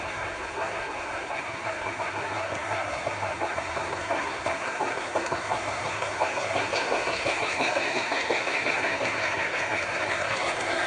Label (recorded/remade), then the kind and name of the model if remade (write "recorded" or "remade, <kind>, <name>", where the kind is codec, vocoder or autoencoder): remade, codec, SNAC